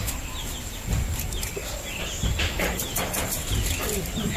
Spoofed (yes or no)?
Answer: yes